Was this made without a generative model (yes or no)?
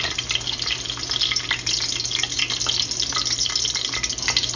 yes